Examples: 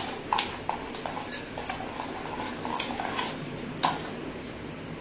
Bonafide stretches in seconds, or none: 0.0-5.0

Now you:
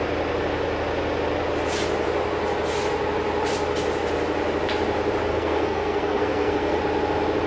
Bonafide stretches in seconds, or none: 0.0-5.3; 6.8-7.5

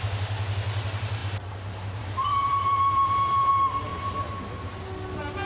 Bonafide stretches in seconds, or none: 0.0-2.4; 3.5-5.5

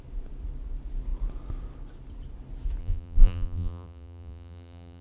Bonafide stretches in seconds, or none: 0.0-2.8

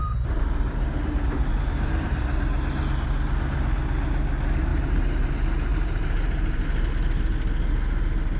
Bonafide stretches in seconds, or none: 2.1-4.7; 5.3-5.7; 6.9-8.4

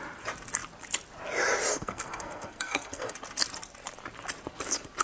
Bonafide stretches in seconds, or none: 0.0-1.7; 3.1-5.0

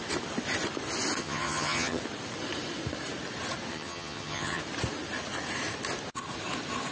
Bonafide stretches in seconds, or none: 0.0-1.2; 2.0-3.7; 4.6-6.9

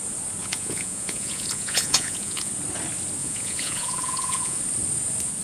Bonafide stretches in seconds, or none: 0.0-0.4; 2.5-3.2; 4.6-5.4